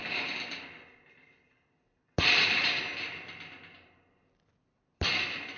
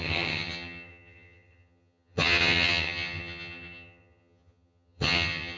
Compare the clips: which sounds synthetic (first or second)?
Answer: second